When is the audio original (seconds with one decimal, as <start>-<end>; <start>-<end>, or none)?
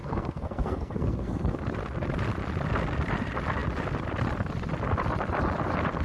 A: 1.6-6.0